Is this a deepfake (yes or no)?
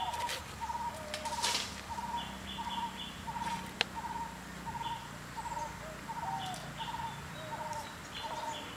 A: no